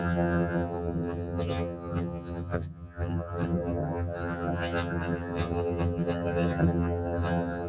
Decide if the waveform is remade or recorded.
remade